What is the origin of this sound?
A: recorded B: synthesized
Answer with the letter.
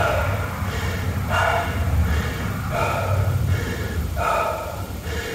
B